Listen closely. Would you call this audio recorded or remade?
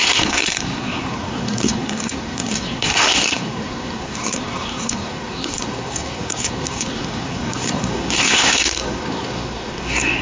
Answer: remade